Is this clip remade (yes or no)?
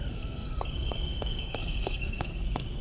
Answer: yes